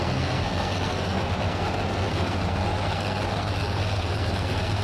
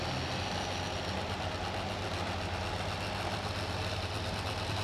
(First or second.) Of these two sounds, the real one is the second